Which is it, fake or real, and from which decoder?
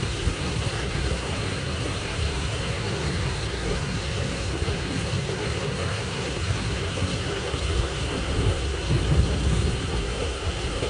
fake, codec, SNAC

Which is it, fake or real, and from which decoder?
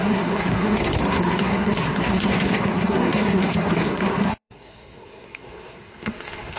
fake, codec, SNAC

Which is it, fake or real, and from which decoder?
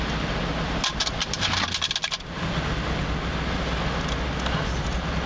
real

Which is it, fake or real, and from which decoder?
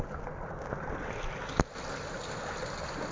real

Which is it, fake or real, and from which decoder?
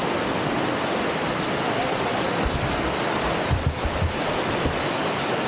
real